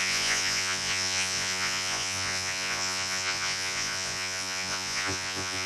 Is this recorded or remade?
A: remade